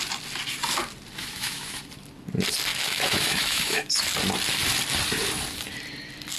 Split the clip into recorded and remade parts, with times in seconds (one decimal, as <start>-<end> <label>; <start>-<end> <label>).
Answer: 0.0-1.2 recorded; 1.2-1.8 remade; 1.8-2.7 recorded; 2.7-3.9 remade; 3.9-6.4 recorded